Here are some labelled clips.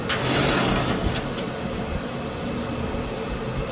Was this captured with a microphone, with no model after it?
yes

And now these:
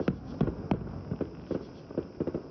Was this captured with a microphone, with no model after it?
yes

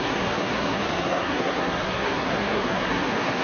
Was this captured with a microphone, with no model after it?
no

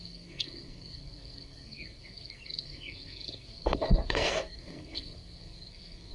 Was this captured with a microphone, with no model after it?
no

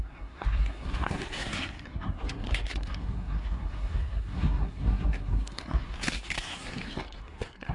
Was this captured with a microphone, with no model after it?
no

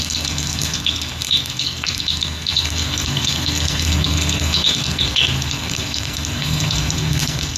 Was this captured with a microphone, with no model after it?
no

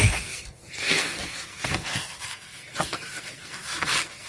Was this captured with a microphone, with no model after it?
no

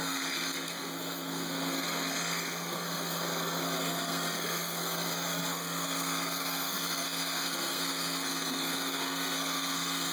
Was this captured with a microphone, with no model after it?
no